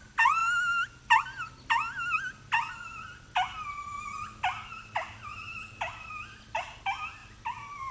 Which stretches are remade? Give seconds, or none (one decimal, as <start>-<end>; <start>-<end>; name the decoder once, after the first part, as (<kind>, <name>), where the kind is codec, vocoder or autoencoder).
none